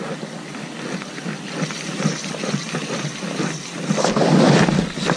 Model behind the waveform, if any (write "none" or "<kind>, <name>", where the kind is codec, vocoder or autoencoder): none